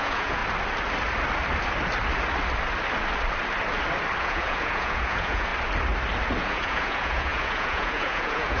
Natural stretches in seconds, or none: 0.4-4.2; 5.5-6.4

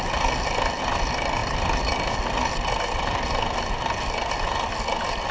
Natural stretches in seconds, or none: 0.0-5.3